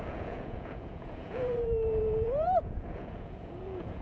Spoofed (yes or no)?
yes